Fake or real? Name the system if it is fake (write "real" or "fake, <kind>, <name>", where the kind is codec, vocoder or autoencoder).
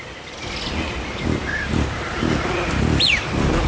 real